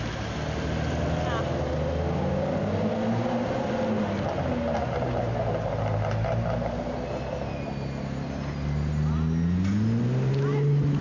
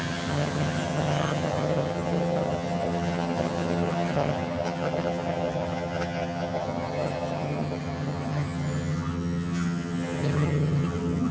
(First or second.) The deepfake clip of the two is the second